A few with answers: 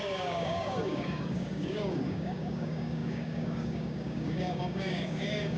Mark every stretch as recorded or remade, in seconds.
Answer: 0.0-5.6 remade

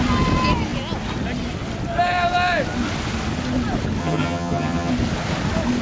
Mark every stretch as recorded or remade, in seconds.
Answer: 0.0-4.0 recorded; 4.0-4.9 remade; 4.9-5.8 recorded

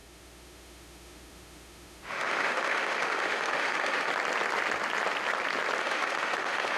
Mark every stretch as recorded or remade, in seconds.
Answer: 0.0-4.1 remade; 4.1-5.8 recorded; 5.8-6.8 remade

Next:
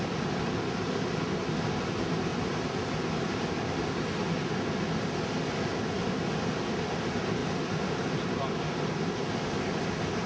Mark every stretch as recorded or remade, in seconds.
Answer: 0.0-10.3 recorded

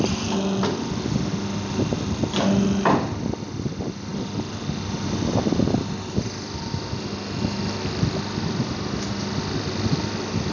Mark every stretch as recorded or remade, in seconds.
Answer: 0.0-10.5 recorded

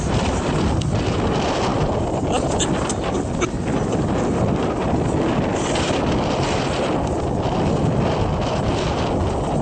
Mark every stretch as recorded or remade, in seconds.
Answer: 0.0-9.6 recorded